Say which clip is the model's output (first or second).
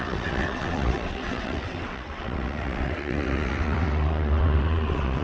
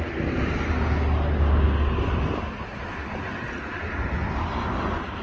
first